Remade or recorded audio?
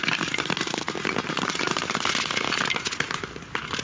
recorded